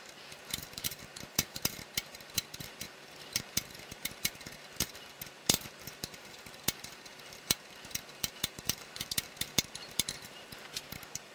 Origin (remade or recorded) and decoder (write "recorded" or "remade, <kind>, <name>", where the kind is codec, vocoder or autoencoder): remade, vocoder, BigVGAN v2